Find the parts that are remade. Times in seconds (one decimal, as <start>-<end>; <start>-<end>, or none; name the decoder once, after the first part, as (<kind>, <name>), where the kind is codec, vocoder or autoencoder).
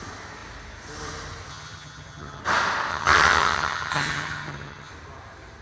1.5-2.4 (vocoder, HiFi-GAN); 2.9-4.9